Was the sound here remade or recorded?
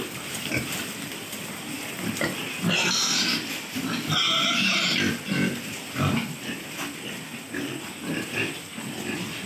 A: recorded